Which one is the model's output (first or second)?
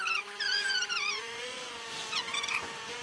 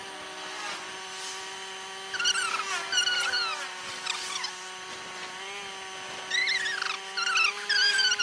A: first